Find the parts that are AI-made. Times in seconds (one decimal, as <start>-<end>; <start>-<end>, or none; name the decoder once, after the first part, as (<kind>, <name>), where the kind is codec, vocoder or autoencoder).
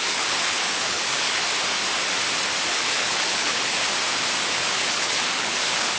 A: 0.0-1.4 (codec, HILCodec); 2.7-3.9; 4.5-6.0